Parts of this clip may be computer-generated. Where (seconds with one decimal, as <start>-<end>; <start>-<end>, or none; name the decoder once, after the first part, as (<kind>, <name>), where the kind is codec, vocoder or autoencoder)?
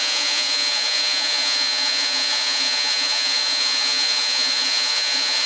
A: 0.0-5.5 (vocoder, Vocos)